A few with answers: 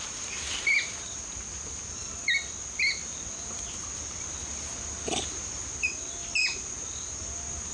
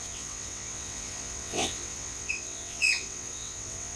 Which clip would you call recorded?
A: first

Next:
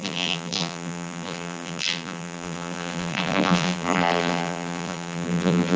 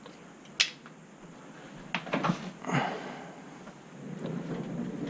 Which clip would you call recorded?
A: second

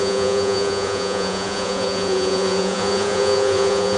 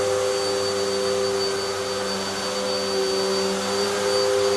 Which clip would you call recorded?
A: second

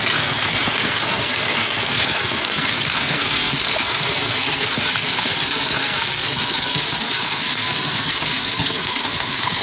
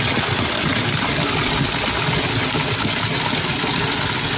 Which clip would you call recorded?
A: second